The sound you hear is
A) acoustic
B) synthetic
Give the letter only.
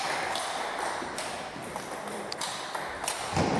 B